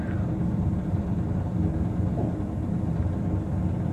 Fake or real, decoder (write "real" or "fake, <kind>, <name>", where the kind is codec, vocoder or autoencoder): real